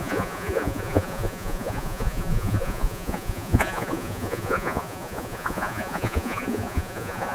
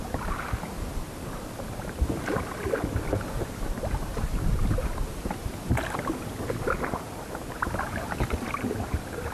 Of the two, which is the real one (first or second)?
second